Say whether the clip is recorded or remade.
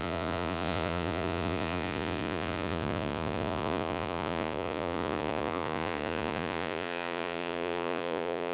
remade